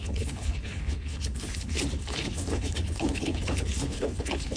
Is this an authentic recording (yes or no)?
no